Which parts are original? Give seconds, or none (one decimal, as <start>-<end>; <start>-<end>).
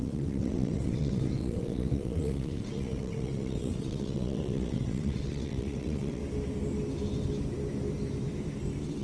6.2-9.0